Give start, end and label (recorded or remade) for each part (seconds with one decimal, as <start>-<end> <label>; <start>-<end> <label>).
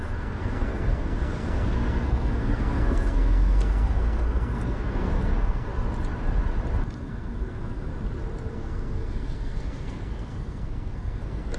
0.0-5.7 remade; 5.7-7.0 recorded; 7.0-7.9 remade; 7.9-8.5 recorded; 8.5-11.6 remade